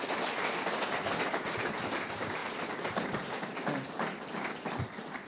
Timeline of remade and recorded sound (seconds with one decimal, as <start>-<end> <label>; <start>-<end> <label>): 0.0-5.3 recorded